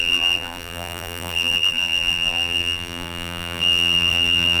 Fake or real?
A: fake